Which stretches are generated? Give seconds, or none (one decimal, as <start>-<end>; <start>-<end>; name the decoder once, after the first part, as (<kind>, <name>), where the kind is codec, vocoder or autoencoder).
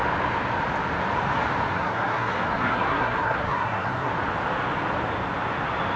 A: 1.7-4.1 (codec, SNAC)